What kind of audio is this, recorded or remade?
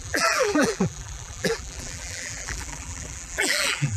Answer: remade